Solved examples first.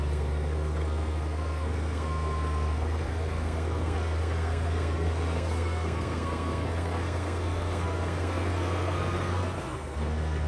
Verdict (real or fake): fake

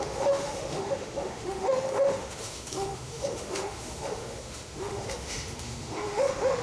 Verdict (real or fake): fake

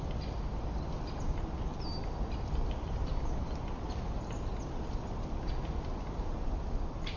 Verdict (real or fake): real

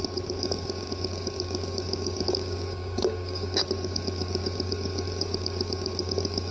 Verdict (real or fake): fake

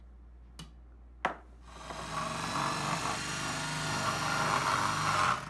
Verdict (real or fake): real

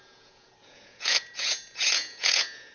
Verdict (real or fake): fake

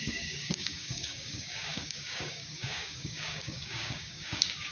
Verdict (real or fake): fake